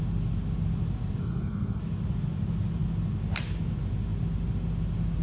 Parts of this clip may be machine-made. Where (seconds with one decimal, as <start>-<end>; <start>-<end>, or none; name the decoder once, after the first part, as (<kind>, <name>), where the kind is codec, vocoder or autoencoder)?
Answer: 1.2-1.8 (codec, SNAC)